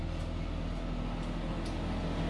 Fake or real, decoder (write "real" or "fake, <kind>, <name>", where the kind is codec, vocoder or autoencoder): real